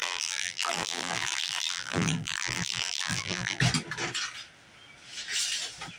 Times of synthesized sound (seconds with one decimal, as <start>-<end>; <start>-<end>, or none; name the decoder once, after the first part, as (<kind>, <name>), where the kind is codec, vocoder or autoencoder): 0.0-3.6 (vocoder, BigVGAN v2)